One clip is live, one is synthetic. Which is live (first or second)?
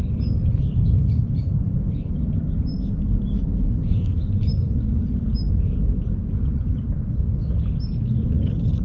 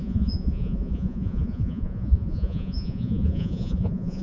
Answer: first